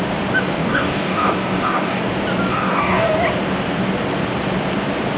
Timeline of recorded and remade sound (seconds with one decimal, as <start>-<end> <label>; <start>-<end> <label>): 0.0-0.6 recorded; 0.6-2.0 remade; 2.0-2.5 recorded; 2.5-3.1 remade; 3.1-5.2 recorded